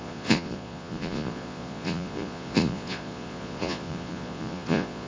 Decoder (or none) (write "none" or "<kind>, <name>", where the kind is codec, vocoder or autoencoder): vocoder, Vocos